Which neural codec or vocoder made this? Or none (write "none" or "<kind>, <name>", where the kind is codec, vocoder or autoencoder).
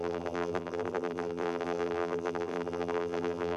vocoder, BigVGAN v2